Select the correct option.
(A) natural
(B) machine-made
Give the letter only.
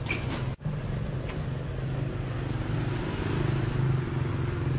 A